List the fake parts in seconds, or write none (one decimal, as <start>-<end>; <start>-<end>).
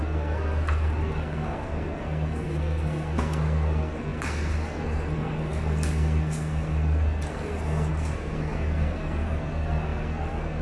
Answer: 0.0-10.6